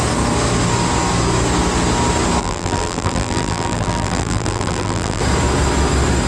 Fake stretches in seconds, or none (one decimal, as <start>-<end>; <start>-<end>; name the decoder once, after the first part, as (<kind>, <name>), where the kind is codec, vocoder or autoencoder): 2.4-5.2 (vocoder, BigVGAN v2)